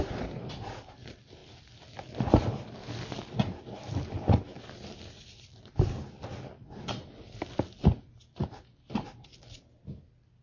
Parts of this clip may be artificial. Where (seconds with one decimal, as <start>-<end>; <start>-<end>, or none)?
4.5-5.9